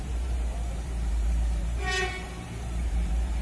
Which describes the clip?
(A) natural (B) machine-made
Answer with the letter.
B